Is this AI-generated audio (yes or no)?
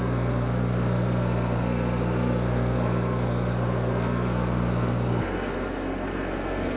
yes